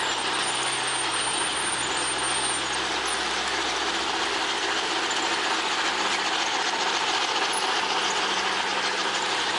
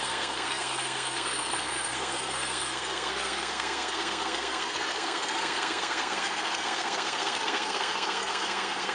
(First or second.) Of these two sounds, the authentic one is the first